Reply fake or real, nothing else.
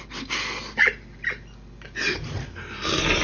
real